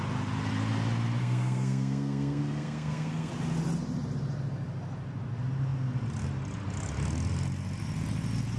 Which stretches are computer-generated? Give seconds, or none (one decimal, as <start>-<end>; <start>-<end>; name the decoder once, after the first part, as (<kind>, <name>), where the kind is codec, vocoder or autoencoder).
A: 1.2-3.3 (codec, SNAC)